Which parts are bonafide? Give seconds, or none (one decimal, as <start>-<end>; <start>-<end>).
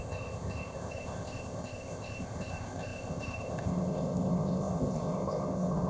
none